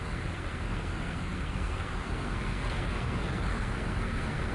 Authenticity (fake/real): fake